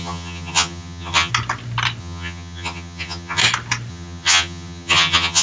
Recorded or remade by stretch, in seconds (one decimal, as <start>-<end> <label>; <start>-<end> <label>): 0.0-1.3 remade; 1.3-2.0 recorded; 2.0-3.4 remade; 3.4-3.9 recorded; 3.9-5.4 remade